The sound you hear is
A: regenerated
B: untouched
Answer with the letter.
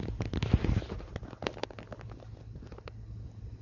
A